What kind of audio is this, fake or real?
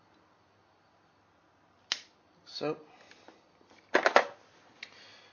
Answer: real